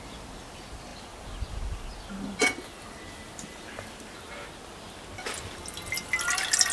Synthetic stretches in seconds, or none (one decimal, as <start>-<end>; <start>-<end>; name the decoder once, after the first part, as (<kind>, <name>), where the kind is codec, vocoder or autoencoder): none